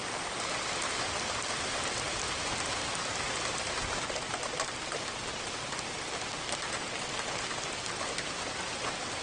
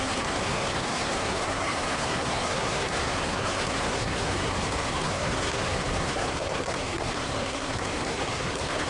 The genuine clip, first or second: first